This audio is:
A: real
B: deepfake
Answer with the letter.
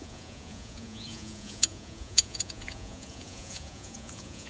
B